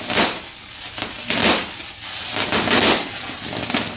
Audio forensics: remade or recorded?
recorded